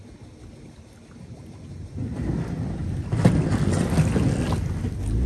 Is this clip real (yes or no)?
yes